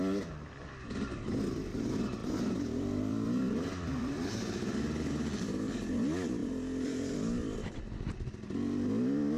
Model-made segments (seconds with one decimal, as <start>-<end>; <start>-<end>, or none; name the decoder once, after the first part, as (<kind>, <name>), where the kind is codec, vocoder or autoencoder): 2.2-4.3 (vocoder, BigVGAN v2); 6.4-7.8

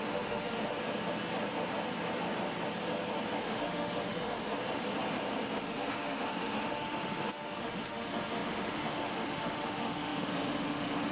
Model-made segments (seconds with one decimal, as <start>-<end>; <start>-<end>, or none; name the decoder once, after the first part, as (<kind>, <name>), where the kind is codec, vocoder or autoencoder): 0.0-0.8 (autoencoder, DAC-VAE); 3.4-4.6; 5.6-11.1

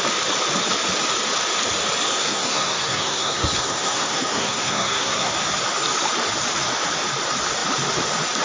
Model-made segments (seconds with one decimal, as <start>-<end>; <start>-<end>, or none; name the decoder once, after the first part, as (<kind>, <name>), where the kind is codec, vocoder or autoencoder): 2.1-5.3 (codec, SNAC)

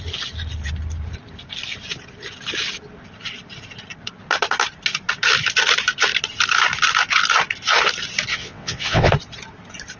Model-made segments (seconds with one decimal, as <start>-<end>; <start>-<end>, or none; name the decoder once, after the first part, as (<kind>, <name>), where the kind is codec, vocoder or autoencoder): 8.3-9.1 (vocoder, WaveNeXt)

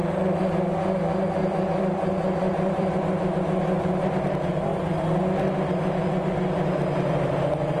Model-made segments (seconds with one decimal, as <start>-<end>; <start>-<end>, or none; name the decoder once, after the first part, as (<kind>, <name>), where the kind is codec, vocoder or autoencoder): 1.4-3.0 (vocoder, BigVGAN v2)

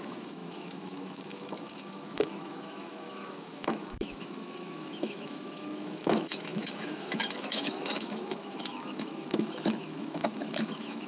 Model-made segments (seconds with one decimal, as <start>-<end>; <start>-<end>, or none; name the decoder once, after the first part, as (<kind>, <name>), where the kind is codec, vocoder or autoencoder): 0.0-11.1 (autoencoder, DAC-VAE)

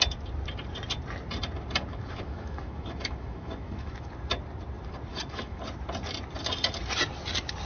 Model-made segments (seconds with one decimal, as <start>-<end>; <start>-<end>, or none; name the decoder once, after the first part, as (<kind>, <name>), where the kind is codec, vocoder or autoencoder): 1.9-4.1 (autoencoder, DAC-VAE); 5.1-5.6